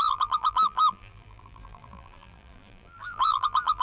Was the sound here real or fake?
fake